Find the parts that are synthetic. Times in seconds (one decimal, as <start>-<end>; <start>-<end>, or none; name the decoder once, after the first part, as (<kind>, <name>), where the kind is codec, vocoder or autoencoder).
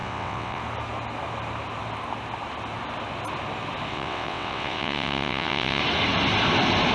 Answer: 0.0-0.6 (vocoder, WaveNeXt); 3.9-5.8